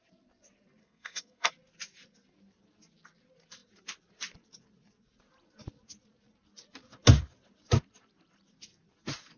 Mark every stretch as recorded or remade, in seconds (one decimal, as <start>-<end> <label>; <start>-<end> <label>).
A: 0.0-0.8 recorded; 0.8-1.5 remade; 1.5-9.4 recorded